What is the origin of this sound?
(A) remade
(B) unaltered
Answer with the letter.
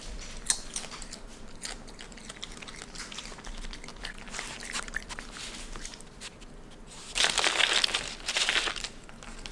B